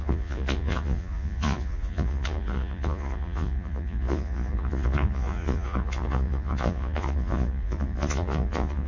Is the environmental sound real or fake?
fake